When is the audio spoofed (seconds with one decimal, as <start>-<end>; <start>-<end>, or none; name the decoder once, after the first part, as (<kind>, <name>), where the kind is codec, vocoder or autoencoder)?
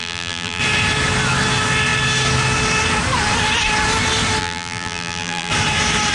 0.0-0.6 (vocoder, BigVGAN v2); 4.4-5.5